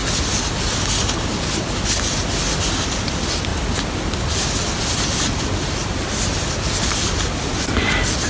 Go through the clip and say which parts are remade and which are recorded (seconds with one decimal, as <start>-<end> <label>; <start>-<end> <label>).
0.0-8.3 recorded